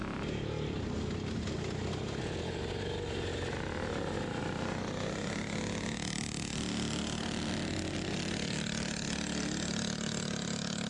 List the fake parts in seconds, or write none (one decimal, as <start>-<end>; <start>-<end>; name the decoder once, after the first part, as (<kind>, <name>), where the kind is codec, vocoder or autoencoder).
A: none